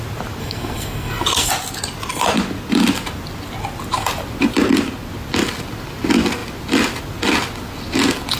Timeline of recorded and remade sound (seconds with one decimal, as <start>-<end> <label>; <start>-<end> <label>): 0.0-0.4 recorded; 0.4-1.5 remade; 1.5-8.4 recorded